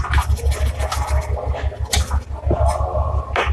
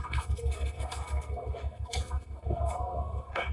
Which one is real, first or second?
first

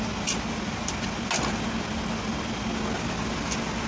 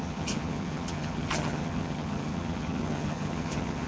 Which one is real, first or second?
first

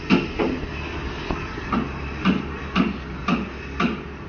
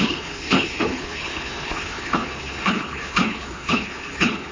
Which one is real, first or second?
first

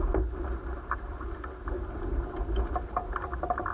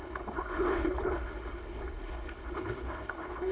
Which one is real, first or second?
first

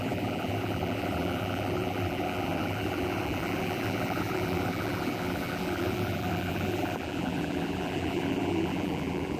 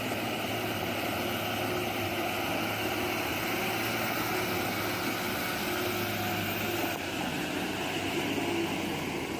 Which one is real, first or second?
second